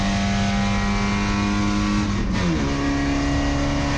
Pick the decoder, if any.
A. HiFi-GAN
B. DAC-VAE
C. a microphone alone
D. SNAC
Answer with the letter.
C